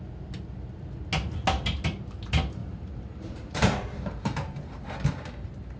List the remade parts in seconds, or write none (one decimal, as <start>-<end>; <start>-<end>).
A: 2.6-4.9